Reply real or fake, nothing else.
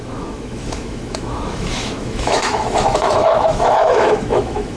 fake